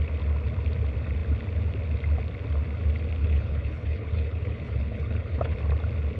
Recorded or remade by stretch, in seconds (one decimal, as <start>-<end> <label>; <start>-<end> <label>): 0.0-3.2 recorded; 3.2-5.6 remade; 5.6-6.2 recorded